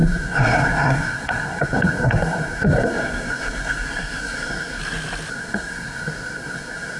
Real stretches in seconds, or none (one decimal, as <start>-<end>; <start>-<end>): 4.8-5.3